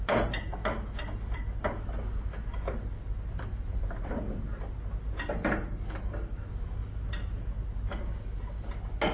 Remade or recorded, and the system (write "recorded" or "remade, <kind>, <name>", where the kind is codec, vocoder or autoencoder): recorded